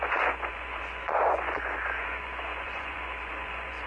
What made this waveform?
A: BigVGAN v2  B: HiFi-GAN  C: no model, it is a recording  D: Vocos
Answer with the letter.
D